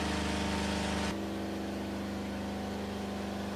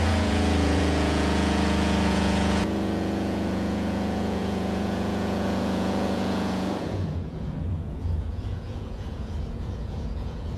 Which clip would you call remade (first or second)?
second